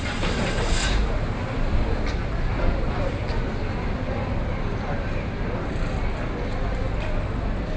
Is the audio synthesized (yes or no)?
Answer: no